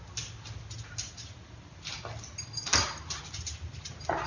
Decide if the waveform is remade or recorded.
recorded